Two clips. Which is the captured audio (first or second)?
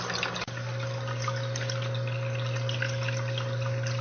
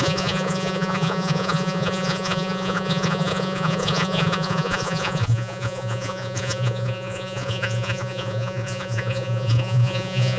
first